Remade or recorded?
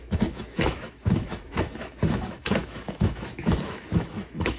remade